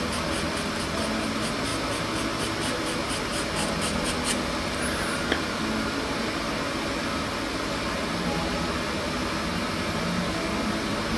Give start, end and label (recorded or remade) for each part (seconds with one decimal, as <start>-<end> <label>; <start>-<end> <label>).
0.0-11.2 recorded